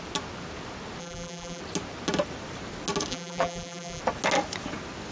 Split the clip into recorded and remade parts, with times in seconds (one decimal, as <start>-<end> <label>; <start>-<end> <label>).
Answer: 0.0-1.0 recorded; 1.0-1.6 remade; 1.6-3.1 recorded; 3.1-4.0 remade; 4.0-5.1 recorded